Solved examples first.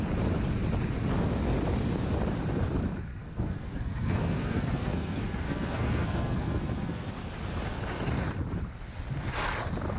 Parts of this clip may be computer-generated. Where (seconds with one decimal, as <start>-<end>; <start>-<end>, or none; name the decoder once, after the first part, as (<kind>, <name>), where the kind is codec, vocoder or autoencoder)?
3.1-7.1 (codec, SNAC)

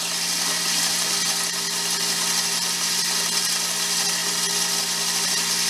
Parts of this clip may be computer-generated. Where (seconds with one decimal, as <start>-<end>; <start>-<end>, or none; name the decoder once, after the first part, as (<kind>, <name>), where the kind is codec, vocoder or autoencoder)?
none

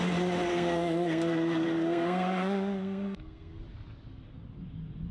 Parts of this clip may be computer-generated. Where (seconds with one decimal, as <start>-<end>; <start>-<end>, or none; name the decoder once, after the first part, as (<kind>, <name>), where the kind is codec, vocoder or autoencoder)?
0.5-3.6 (codec, SNAC)

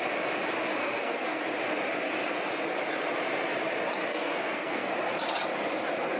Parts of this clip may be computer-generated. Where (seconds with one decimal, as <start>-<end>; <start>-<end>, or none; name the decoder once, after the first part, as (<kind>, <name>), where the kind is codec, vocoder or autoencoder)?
0.8-1.4 (codec, SNAC); 4.1-4.9

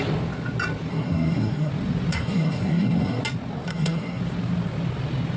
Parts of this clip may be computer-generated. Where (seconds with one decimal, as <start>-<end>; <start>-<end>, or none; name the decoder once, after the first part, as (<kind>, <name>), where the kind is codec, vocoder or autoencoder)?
0.9-1.7 (codec, SNAC); 2.1-3.2; 3.7-4.2

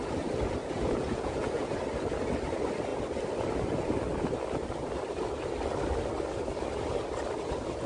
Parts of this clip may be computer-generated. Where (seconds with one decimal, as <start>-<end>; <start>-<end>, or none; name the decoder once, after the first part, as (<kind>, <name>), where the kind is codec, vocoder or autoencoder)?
0.6-1.7 (vocoder, Vocos)